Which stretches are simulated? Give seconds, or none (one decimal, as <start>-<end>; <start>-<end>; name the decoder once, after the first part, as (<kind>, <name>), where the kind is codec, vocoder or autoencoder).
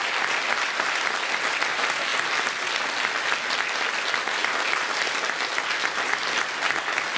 none